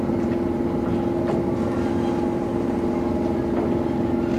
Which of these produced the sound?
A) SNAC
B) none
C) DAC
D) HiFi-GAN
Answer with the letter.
B